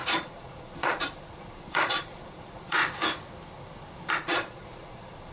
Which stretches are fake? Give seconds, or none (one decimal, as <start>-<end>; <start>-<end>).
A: 0.0-2.8; 4.1-5.3